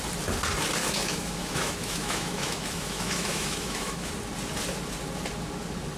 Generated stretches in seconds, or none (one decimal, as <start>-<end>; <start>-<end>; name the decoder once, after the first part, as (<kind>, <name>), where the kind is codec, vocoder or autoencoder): 0.8-4.1 (autoencoder, DAC-VAE)